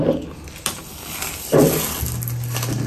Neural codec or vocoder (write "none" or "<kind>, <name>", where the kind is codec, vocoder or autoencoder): none